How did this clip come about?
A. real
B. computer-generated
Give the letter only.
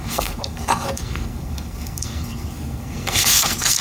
B